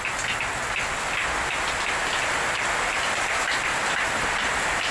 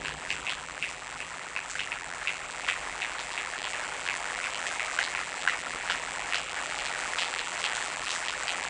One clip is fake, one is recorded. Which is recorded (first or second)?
first